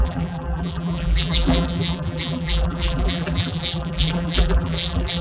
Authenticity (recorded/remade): remade